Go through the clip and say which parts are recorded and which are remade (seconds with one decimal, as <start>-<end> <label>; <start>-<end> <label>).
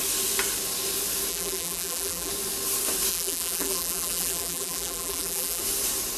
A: 0.0-1.3 recorded; 1.3-2.3 remade; 2.3-3.1 recorded; 3.1-5.6 remade; 5.6-6.2 recorded